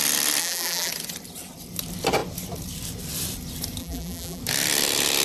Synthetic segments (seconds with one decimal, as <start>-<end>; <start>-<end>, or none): 0.4-0.9; 3.8-4.4